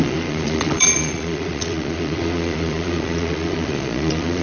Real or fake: fake